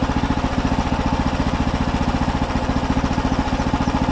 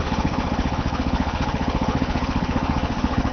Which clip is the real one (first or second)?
first